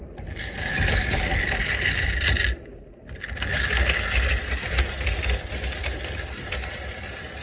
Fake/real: real